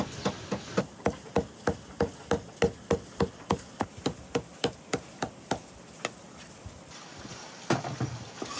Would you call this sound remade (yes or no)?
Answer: no